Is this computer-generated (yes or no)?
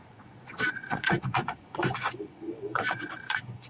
yes